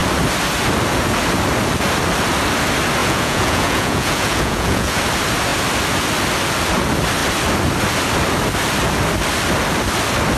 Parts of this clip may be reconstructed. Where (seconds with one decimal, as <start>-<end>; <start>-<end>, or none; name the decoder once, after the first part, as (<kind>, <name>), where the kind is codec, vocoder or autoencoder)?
3.0-5.0 (vocoder, Vocos)